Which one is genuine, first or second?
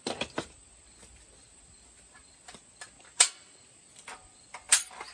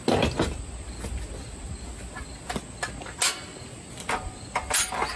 second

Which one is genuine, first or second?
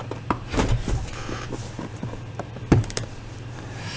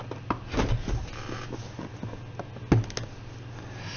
second